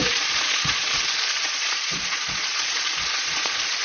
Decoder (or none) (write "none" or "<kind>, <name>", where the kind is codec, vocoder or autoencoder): vocoder, Vocos